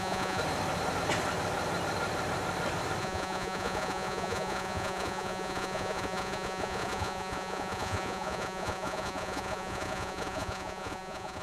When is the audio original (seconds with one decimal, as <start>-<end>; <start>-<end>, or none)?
0.4-3.0